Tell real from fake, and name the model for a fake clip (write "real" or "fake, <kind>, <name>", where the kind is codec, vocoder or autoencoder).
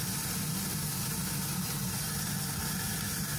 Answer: real